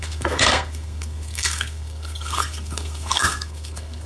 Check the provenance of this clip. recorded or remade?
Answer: remade